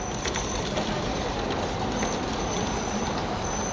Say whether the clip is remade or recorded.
recorded